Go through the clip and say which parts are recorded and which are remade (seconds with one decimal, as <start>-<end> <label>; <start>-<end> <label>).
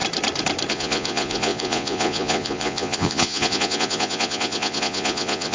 0.0-0.7 recorded; 0.7-5.5 remade